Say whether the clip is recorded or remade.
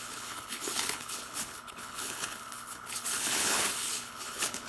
remade